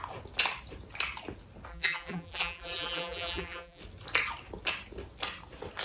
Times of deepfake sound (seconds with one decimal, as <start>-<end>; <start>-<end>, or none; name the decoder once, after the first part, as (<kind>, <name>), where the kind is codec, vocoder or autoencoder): 1.7-3.8 (vocoder, BigVGAN v2)